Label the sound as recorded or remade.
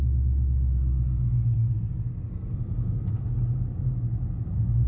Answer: recorded